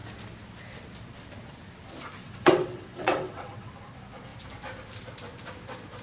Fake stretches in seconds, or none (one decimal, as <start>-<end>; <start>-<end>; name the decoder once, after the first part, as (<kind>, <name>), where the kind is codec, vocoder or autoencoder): 2.2-3.7 (vocoder, WaveNeXt)